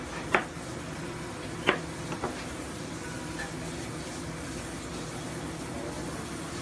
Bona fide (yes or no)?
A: yes